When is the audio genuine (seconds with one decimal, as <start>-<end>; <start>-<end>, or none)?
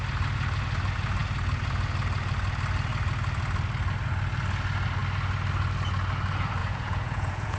0.0-6.6